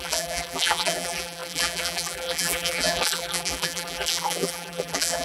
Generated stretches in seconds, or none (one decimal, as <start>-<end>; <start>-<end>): 0.0-5.2